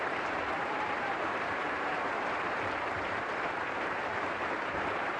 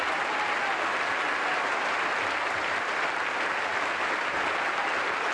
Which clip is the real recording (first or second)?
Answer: second